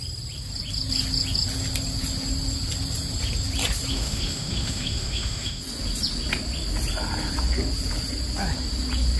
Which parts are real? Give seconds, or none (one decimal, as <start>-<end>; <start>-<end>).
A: 0.0-3.9; 5.6-9.2